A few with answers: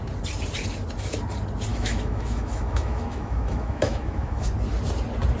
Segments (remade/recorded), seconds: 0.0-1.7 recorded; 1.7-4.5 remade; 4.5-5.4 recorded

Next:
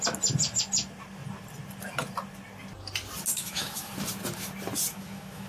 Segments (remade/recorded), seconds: 0.0-3.3 recorded; 3.3-3.9 remade; 3.9-4.9 recorded; 4.9-5.5 remade